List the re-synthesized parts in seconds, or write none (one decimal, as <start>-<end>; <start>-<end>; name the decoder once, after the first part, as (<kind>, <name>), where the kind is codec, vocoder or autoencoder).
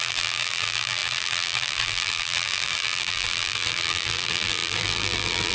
0.0-5.5 (vocoder, BigVGAN v2)